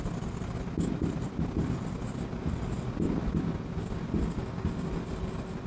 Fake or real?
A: real